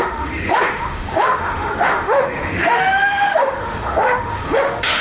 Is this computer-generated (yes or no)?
yes